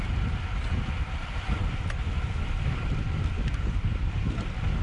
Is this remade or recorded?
remade